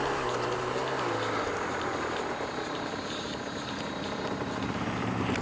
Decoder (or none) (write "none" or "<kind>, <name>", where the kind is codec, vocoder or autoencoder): none